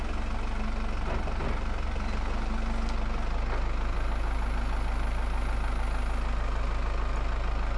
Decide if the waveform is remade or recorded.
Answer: recorded